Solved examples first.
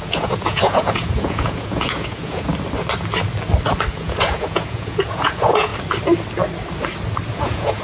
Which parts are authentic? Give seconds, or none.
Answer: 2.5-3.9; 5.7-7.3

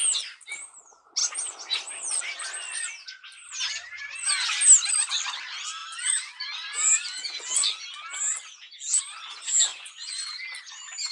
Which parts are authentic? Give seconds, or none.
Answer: 0.0-9.7; 10.2-11.1

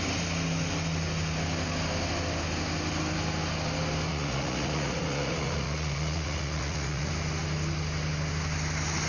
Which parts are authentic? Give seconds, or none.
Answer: 0.0-4.1; 7.1-9.1

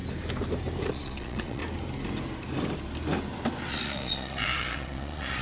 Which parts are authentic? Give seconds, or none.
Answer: 0.0-0.9; 1.6-3.7

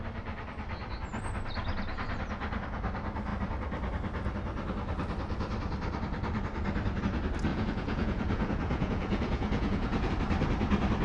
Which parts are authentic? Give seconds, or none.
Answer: 0.0-7.5; 10.1-11.0

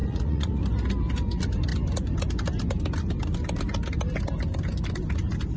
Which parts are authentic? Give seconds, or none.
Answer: 0.6-5.6